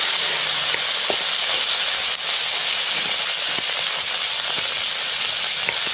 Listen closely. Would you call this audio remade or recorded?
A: recorded